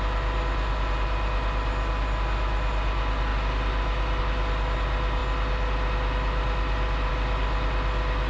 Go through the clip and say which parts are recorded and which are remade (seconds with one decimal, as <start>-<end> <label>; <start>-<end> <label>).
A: 0.0-8.3 recorded